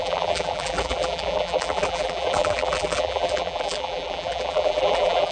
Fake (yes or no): yes